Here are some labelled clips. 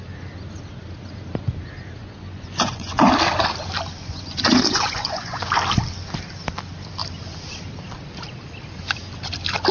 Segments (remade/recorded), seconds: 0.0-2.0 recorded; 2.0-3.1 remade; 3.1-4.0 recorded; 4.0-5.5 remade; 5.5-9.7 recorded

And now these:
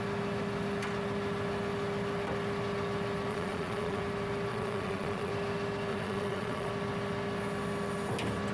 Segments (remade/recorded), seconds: 0.0-3.3 recorded; 3.3-4.0 remade; 4.0-4.5 recorded; 4.5-5.3 remade; 5.3-5.9 recorded; 5.9-6.7 remade; 6.7-8.5 recorded

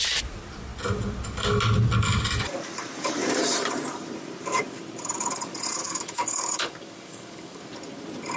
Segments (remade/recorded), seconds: 0.0-5.8 recorded; 5.8-7.6 remade; 7.6-8.4 recorded

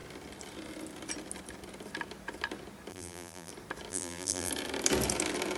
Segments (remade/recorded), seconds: 0.0-2.9 recorded; 2.9-3.5 remade; 3.5-3.9 recorded; 3.9-4.5 remade; 4.5-5.6 recorded

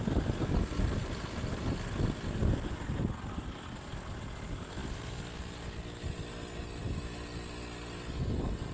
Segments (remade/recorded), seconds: 0.0-8.7 recorded

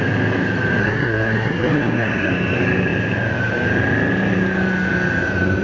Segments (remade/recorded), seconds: 0.0-0.8 recorded; 0.8-2.3 remade; 2.3-5.6 recorded

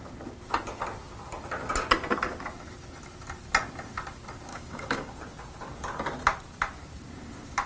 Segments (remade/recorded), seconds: 0.0-4.5 recorded; 4.5-5.1 remade; 5.1-7.7 recorded

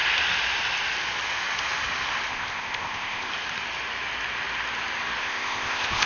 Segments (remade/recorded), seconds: 0.0-2.3 recorded; 2.3-3.3 remade; 3.3-5.2 recorded; 5.2-6.1 remade